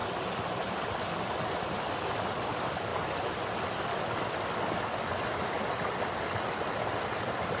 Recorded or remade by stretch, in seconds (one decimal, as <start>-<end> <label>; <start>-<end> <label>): 0.0-7.6 recorded